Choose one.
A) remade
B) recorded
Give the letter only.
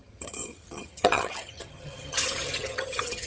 A